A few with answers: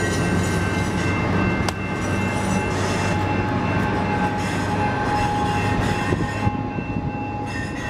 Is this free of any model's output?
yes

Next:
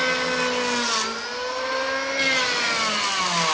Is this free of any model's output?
yes